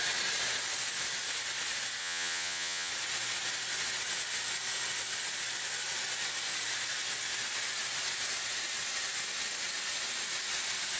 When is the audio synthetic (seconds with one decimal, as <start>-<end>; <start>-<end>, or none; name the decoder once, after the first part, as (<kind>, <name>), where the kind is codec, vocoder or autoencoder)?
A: 2.0-2.9 (vocoder, Vocos)